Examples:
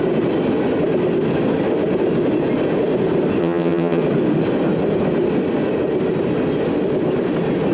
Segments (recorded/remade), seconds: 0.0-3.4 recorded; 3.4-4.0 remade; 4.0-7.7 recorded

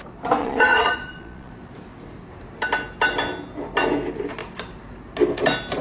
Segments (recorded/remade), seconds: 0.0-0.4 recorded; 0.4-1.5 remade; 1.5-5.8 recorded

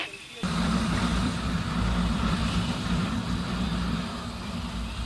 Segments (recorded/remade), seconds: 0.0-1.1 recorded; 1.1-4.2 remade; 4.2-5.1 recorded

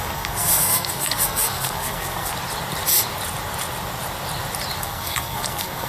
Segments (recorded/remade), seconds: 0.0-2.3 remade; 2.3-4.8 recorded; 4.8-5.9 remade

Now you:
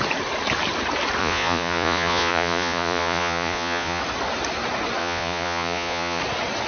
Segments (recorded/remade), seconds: 0.0-1.2 recorded; 1.2-4.0 remade; 4.0-5.0 recorded; 5.0-6.2 remade; 6.2-6.7 recorded

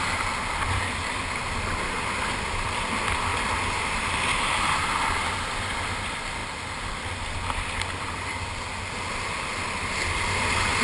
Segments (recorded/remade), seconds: 0.0-10.8 recorded